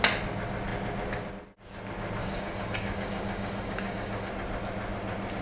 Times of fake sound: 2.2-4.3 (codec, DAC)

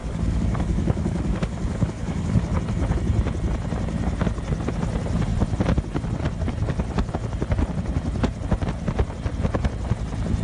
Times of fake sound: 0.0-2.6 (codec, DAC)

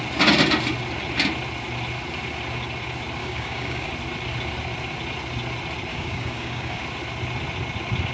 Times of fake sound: 3.2-3.9 (codec, DAC); 5.9-6.8